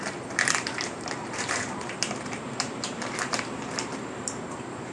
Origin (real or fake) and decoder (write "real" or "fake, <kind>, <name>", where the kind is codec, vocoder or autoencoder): fake, vocoder, BigVGAN v2